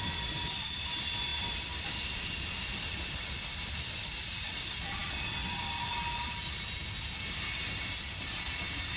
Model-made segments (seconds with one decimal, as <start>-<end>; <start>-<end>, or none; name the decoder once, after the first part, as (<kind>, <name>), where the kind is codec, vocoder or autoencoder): 0.0-6.4 (vocoder, BigVGAN v2); 7.8-9.0